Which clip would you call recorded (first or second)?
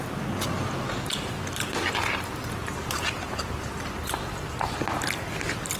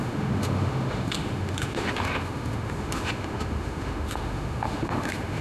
first